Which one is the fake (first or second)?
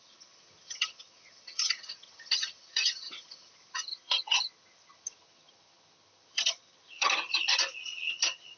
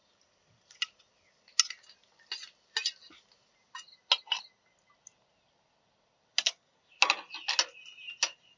first